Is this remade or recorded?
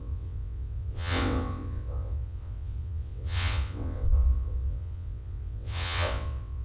remade